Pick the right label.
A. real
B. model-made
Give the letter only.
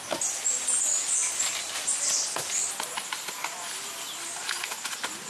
A